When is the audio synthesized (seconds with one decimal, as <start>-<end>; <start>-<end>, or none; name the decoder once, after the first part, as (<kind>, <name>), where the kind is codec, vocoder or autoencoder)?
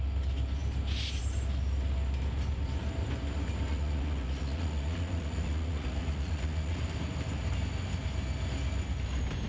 3.7-6.8 (vocoder, Vocos)